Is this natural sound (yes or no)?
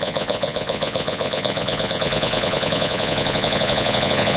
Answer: no